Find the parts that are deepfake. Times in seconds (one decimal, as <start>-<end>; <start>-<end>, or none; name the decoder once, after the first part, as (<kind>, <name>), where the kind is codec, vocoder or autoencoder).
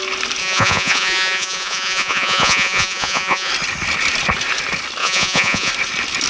0.4-3.5 (vocoder, Vocos); 5.0-5.7